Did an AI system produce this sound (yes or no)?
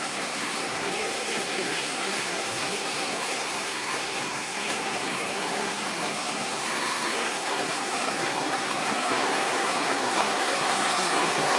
yes